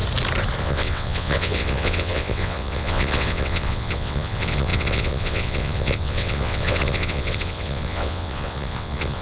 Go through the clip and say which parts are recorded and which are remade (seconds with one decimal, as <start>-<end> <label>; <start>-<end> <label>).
0.0-0.6 recorded; 0.6-9.2 remade